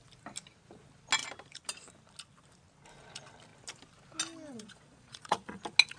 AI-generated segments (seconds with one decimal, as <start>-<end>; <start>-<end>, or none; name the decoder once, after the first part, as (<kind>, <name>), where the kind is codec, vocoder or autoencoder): 4.5-5.6 (vocoder, Vocos)